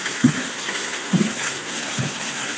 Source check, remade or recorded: remade